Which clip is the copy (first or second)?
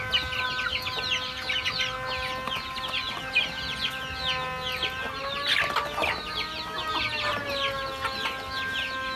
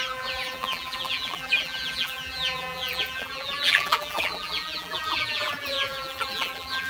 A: second